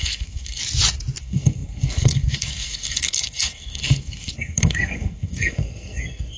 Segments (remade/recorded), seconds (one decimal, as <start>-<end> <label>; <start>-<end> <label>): 0.0-0.6 remade; 0.6-1.2 recorded; 1.2-6.4 remade